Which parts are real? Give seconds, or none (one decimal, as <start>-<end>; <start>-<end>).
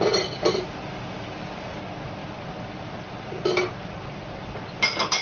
0.0-5.2